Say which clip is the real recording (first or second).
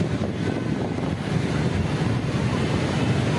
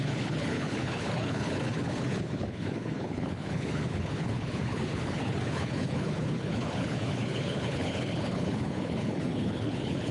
first